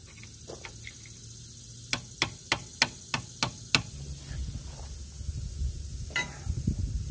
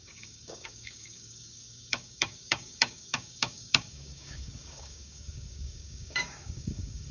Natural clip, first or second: first